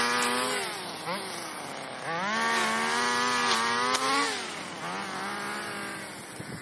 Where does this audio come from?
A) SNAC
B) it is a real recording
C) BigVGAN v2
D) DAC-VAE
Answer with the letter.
B